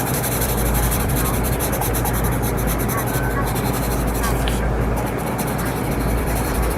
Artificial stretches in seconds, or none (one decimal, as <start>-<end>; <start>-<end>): 0.0-1.8; 5.9-6.8